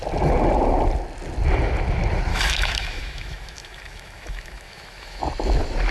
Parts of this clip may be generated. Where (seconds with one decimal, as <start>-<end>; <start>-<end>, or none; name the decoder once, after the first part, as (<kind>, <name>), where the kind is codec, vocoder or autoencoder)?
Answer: 2.3-5.2 (autoencoder, DAC-VAE)